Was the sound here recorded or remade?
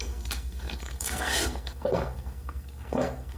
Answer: remade